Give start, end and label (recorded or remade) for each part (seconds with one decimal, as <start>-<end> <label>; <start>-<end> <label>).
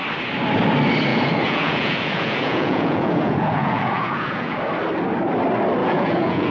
0.0-1.1 recorded; 1.1-4.6 remade; 4.6-5.8 recorded; 5.8-6.5 remade